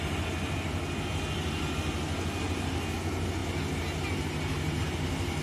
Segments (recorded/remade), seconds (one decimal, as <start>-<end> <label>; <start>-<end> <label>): 0.0-5.4 recorded